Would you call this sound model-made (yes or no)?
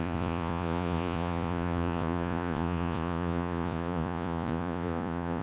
yes